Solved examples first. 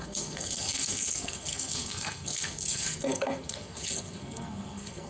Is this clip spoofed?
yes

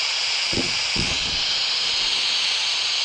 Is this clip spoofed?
yes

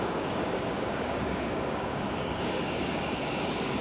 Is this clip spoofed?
yes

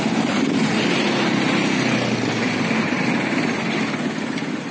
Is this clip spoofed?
no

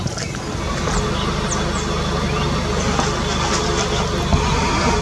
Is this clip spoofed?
no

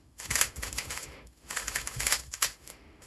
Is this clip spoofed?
yes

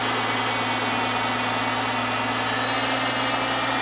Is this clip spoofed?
no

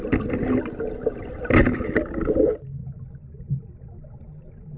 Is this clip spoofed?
no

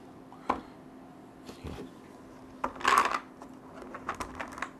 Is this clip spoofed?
no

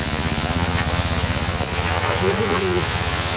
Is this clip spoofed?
yes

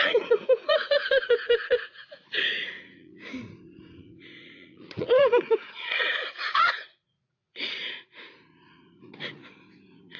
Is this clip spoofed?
yes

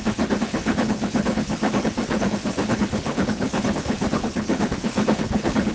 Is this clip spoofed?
yes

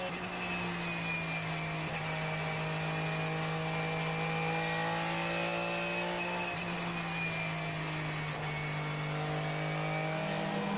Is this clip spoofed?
no